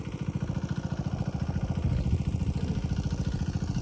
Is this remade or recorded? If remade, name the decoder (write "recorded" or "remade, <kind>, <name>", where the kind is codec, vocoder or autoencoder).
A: recorded